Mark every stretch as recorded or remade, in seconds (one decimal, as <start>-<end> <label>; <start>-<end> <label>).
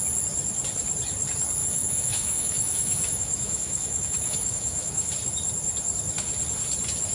0.0-1.6 recorded; 1.6-5.1 remade; 5.1-7.1 recorded